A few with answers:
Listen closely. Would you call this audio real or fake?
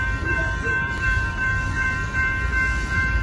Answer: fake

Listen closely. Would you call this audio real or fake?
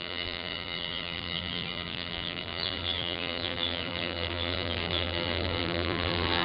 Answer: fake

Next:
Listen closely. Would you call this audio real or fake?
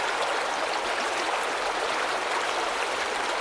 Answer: real